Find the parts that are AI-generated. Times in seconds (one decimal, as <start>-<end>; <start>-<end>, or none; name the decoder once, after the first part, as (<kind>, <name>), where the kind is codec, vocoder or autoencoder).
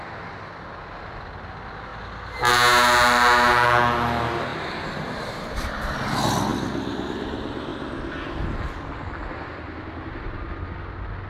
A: 4.5-5.7 (vocoder, BigVGAN v2); 6.5-7.1